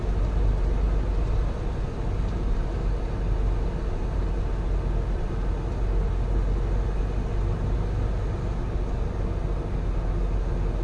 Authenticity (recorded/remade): recorded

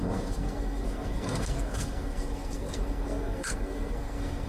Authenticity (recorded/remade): remade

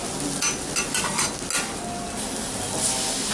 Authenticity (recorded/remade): recorded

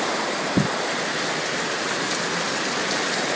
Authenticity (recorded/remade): recorded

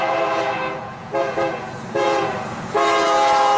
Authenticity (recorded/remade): remade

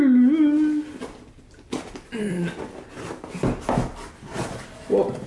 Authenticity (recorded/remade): recorded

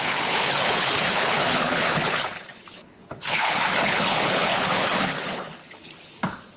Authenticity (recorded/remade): remade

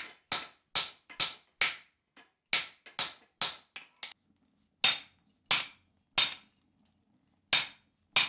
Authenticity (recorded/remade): recorded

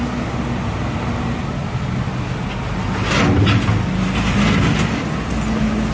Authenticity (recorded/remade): recorded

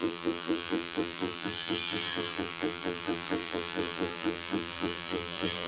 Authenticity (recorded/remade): remade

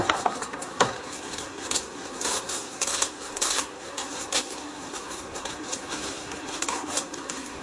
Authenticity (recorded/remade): remade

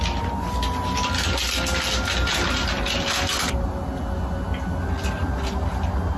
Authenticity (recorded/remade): recorded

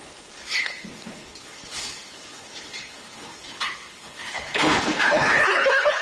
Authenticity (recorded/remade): remade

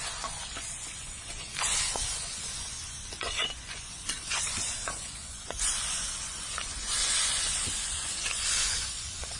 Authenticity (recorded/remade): remade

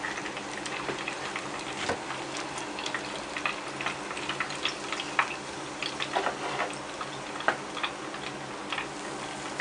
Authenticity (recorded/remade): recorded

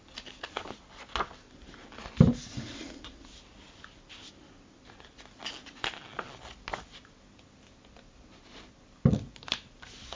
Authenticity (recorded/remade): recorded